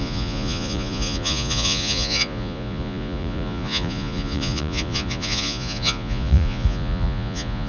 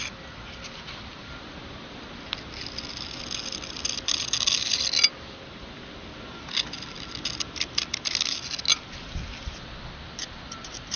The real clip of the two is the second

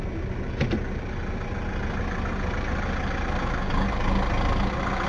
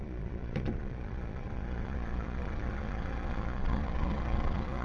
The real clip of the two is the first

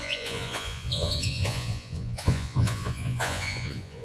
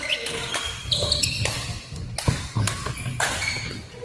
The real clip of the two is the second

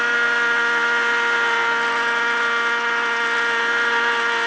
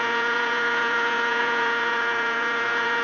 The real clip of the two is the first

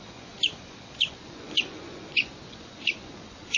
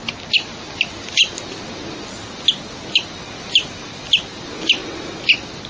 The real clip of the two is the second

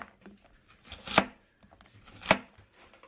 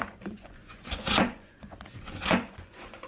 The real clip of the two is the first